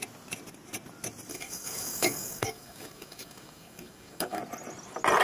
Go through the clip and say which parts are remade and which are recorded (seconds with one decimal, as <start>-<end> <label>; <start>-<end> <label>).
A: 0.0-1.3 recorded; 1.3-4.4 remade; 4.4-5.2 recorded